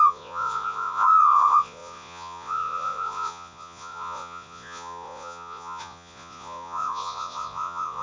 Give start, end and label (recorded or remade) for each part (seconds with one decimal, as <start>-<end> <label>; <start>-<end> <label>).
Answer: 0.0-8.0 remade